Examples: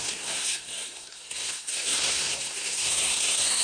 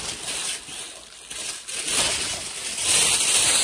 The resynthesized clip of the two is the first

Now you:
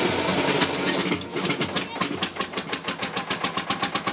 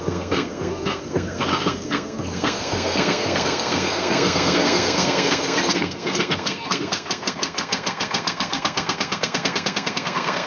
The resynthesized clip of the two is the second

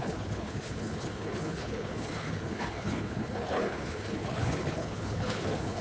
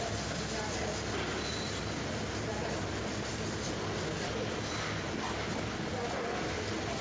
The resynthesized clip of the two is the first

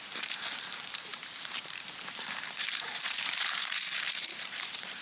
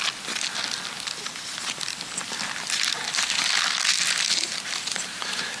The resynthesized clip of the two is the first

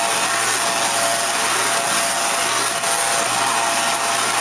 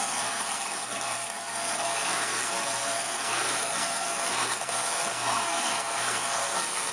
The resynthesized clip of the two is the second